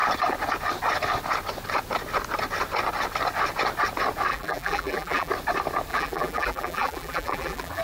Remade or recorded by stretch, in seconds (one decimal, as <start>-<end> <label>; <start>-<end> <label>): 0.0-4.3 recorded; 4.3-5.3 remade; 5.3-5.9 recorded; 5.9-7.8 remade